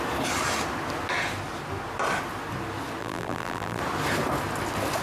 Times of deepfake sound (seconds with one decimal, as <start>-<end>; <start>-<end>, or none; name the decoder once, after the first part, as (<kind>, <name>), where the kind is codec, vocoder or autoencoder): 3.0-3.8 (vocoder, BigVGAN v2)